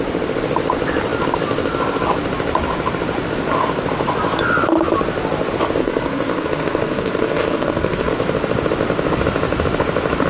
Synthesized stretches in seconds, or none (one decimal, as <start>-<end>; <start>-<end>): 5.8-8.1